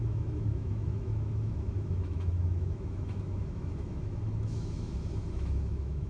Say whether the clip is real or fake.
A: fake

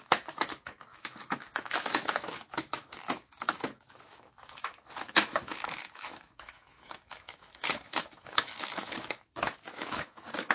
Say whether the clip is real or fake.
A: fake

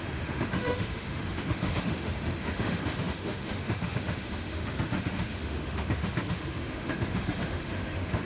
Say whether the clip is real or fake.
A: fake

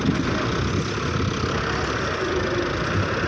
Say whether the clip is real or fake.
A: real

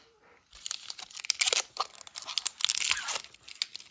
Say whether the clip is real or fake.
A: real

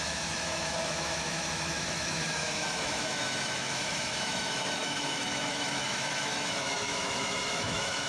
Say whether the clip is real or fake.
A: fake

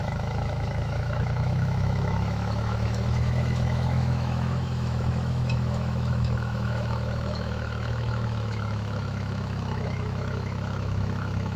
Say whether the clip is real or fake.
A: fake